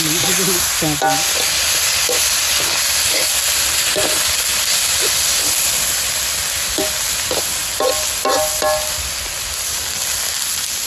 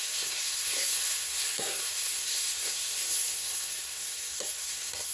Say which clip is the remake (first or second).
second